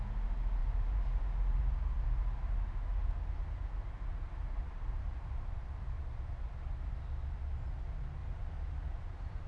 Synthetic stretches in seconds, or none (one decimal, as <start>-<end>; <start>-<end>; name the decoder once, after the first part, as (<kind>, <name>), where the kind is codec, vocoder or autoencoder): 0.6-3.3 (vocoder, BigVGAN v2); 4.1-6.0; 8.2-9.5